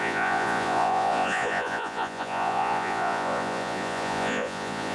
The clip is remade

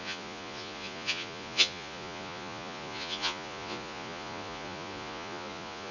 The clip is remade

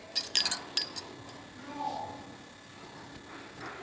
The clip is recorded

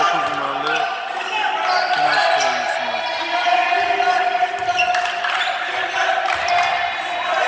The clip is recorded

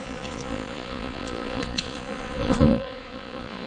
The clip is remade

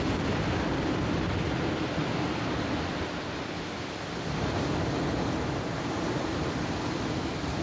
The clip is recorded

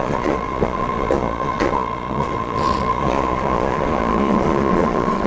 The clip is remade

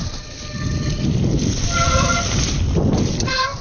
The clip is recorded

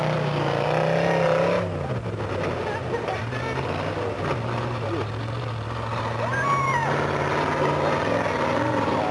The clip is recorded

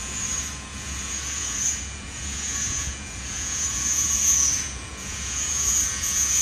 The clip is remade